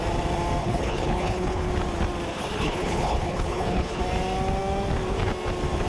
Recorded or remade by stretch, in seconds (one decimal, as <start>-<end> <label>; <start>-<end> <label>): 0.0-0.6 recorded; 0.6-1.7 remade; 1.7-2.3 recorded; 2.3-4.0 remade; 4.0-5.9 recorded